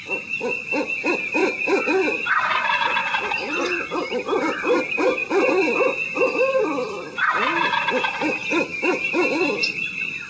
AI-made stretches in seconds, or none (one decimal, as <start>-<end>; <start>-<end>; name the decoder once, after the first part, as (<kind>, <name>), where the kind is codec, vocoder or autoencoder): 3.0-4.8 (vocoder, BigVGAN v2)